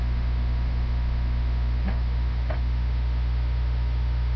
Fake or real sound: fake